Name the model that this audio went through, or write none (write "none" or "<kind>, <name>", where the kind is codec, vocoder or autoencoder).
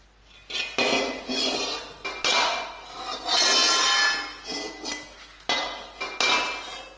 none